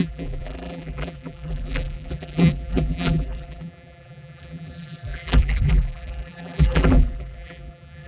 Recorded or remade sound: remade